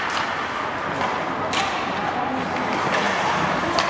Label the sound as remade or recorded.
recorded